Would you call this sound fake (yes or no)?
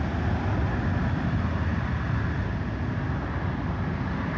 no